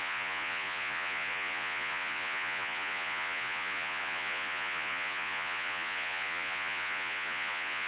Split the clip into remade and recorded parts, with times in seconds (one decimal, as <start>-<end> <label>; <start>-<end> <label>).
0.0-7.9 remade